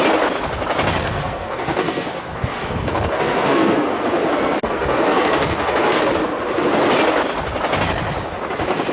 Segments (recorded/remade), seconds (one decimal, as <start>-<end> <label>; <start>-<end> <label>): 0.0-1.0 recorded; 1.0-6.0 remade; 6.0-8.9 recorded